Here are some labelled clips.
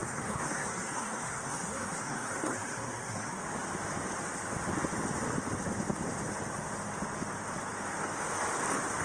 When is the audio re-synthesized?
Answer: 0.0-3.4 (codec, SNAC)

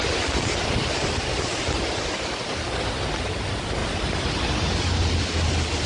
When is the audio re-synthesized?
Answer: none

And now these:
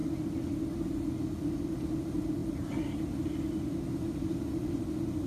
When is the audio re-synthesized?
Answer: none

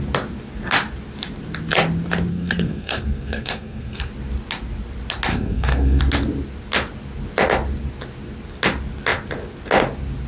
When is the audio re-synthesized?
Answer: 2.3-4.1 (codec, SNAC); 5.3-6.0

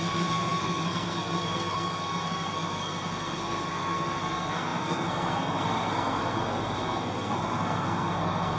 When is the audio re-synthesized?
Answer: 0.0-8.6 (codec, SNAC)

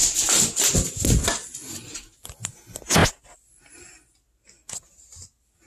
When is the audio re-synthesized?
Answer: none